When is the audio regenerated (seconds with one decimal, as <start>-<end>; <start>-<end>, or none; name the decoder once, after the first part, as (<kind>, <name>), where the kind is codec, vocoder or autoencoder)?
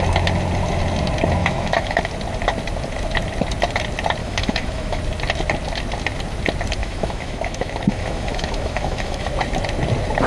1.4-2.0 (autoencoder, DAC-VAE); 4.2-5.0; 6.8-9.3